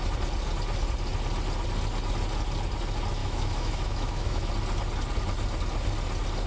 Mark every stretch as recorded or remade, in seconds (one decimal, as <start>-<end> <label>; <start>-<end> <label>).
0.0-3.2 recorded; 3.2-4.5 remade; 4.5-6.5 recorded